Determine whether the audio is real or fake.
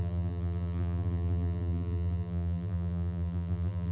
fake